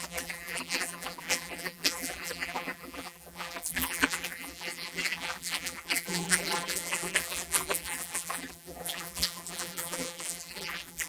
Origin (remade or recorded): remade